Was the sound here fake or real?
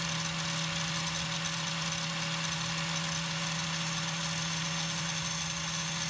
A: real